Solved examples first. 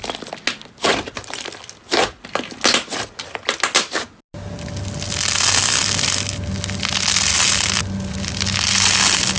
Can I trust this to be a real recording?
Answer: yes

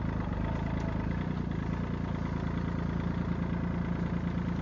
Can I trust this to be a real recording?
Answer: yes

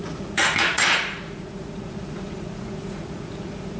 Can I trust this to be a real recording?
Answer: no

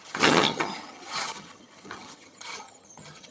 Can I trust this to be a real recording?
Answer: no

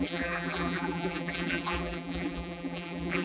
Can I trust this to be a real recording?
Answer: no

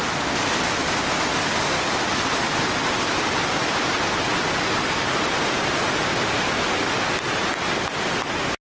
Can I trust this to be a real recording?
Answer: yes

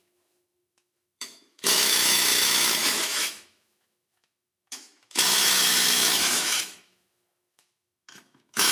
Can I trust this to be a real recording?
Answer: no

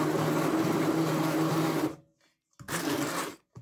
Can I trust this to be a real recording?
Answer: yes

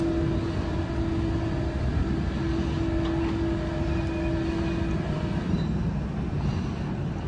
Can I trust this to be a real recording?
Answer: yes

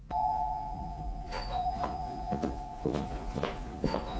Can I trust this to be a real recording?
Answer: no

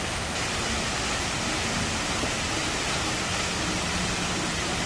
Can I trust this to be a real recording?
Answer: yes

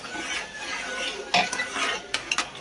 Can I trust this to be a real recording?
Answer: yes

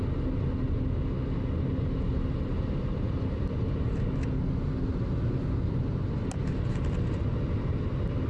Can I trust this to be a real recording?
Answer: yes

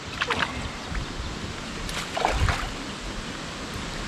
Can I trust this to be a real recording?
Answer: yes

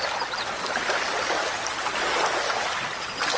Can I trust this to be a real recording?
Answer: yes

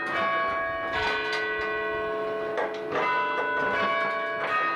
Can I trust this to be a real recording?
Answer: yes